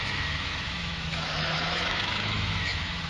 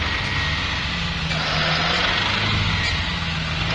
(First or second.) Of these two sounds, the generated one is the first